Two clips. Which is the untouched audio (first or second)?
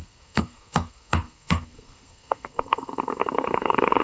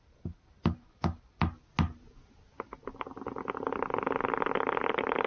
second